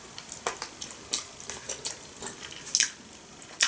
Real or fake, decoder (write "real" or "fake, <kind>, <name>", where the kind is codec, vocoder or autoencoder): real